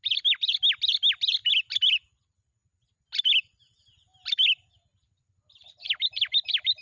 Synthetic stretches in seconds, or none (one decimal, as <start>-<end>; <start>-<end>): none